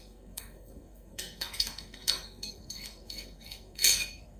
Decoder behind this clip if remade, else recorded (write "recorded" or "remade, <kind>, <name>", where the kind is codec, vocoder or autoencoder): remade, codec, SNAC